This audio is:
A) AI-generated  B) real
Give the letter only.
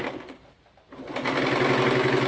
B